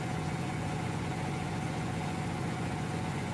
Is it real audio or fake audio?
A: fake